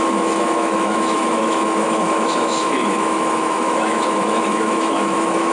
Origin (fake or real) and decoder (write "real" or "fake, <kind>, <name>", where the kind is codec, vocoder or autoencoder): fake, autoencoder, DAC-VAE